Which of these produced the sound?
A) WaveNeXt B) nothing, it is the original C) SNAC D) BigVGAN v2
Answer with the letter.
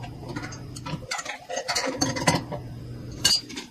D